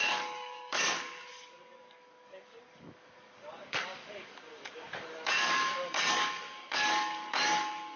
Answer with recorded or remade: remade